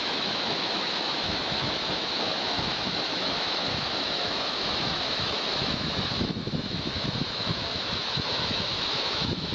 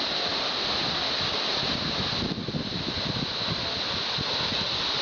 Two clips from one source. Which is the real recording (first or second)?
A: second